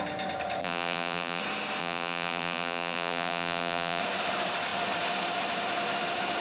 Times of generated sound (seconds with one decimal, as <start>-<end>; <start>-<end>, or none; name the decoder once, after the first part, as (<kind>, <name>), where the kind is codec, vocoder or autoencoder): 0.6-1.4 (vocoder, BigVGAN v2); 1.8-4.0